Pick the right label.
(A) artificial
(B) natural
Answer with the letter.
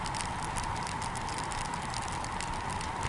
B